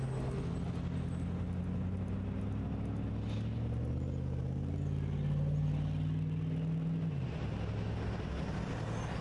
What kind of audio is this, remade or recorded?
recorded